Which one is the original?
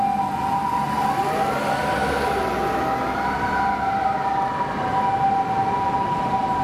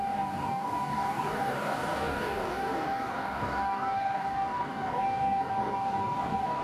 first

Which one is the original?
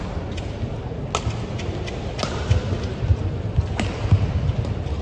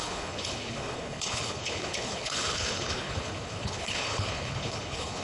first